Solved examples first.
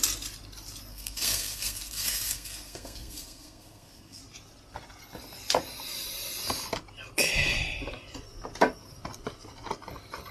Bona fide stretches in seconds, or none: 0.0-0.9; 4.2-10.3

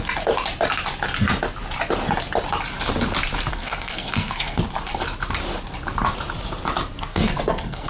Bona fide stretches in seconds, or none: 0.0-3.5; 4.6-7.1

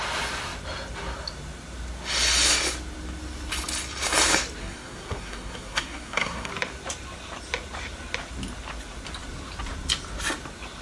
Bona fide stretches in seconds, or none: 0.0-4.6; 6.5-10.8

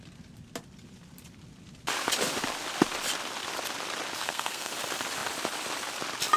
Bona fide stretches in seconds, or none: 0.0-4.2; 4.7-6.4